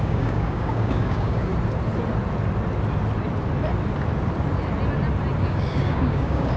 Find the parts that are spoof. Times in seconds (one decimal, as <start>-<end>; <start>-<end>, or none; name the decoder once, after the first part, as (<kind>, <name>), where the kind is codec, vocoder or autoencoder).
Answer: 0.0-1.5 (codec, DAC); 5.4-6.6